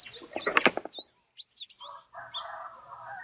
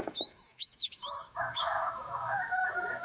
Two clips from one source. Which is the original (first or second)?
first